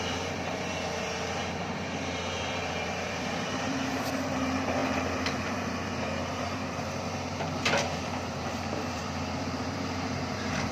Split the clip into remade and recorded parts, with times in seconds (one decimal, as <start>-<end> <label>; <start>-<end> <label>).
0.0-10.7 remade